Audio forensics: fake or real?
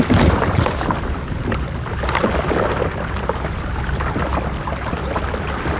real